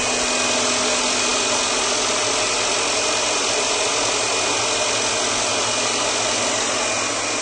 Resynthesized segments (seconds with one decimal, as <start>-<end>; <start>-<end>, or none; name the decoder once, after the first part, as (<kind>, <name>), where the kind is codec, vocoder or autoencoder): none